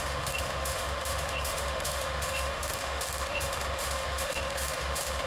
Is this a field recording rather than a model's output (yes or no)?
no